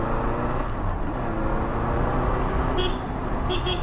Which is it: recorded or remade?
recorded